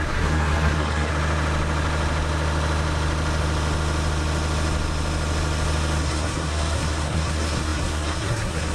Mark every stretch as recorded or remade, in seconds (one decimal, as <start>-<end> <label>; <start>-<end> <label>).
0.0-1.1 remade; 1.1-6.0 recorded; 6.0-8.7 remade